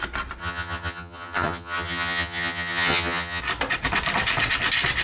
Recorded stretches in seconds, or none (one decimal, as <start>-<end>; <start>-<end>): 0.0-0.4; 3.4-5.0